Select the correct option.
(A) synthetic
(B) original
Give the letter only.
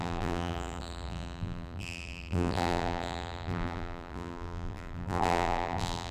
A